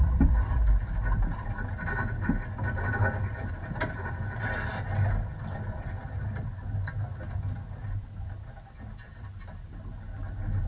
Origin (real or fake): real